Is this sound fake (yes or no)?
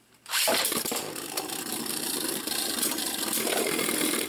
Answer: yes